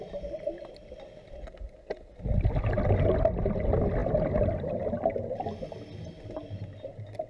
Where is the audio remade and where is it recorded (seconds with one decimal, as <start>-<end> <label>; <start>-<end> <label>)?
0.0-7.3 recorded

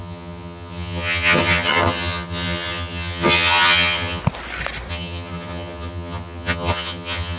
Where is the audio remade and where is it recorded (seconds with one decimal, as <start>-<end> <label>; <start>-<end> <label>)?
0.0-4.2 remade; 4.2-4.9 recorded; 4.9-7.4 remade